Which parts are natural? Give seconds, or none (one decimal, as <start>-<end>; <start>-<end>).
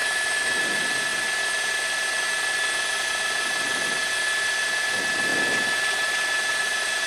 0.6-7.1